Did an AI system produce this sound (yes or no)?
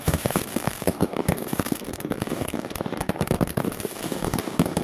yes